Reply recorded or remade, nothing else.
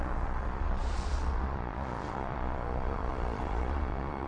remade